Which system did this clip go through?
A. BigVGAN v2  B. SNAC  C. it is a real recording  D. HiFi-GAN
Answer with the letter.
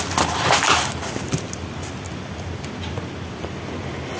C